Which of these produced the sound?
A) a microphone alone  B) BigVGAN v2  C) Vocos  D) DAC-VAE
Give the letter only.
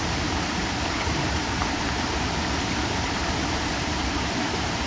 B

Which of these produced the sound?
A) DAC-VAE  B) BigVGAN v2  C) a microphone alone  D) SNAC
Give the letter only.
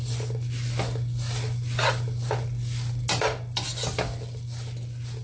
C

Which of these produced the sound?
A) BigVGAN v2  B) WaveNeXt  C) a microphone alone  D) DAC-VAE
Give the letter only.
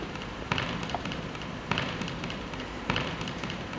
A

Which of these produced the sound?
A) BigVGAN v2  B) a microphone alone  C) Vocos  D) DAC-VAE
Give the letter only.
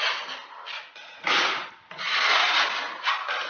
B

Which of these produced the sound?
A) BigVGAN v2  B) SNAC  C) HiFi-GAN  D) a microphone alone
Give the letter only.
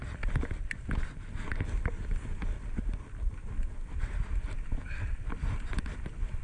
D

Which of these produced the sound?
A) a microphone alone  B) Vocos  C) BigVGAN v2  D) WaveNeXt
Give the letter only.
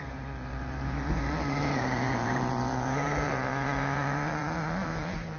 C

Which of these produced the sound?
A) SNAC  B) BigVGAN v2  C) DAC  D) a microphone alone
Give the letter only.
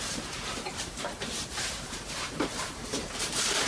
B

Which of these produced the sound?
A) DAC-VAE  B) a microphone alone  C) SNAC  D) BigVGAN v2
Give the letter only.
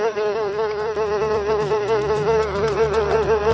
D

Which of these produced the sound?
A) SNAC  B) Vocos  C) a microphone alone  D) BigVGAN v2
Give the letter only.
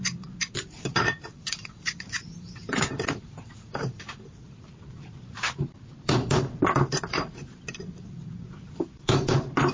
D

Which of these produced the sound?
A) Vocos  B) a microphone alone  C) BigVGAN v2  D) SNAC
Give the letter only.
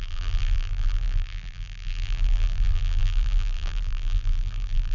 C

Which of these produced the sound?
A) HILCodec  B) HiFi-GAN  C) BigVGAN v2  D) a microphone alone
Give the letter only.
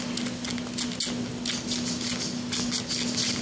D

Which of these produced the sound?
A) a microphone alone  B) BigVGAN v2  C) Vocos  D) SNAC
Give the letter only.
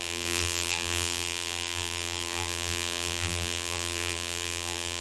B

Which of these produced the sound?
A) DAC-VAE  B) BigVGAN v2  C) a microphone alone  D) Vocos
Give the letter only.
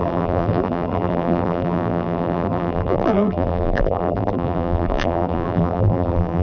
B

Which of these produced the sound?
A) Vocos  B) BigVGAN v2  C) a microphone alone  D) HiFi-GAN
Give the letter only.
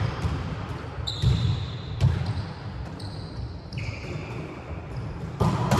B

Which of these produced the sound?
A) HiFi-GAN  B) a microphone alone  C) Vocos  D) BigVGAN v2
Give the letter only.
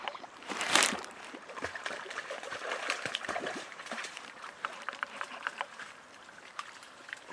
D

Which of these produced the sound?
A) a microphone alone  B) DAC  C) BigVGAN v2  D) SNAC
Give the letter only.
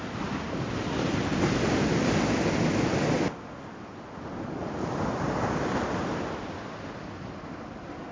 A